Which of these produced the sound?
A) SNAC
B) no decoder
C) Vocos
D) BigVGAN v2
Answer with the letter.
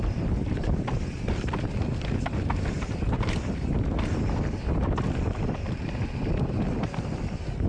B